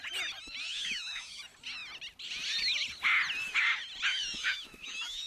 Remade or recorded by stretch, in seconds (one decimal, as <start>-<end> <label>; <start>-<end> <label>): 0.0-0.7 recorded; 0.7-1.4 remade; 1.4-4.1 recorded; 4.1-5.3 remade